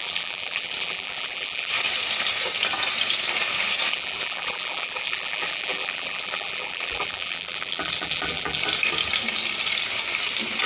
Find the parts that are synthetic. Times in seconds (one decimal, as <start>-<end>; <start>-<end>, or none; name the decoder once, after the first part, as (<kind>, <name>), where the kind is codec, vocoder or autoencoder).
0.0-1.7 (vocoder, BigVGAN v2); 3.9-8.6